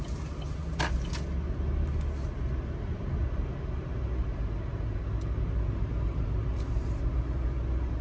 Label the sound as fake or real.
real